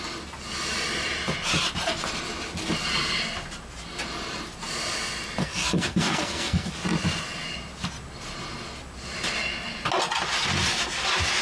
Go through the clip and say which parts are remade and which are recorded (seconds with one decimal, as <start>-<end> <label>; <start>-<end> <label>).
0.0-5.4 recorded; 5.4-6.7 remade; 6.7-11.4 recorded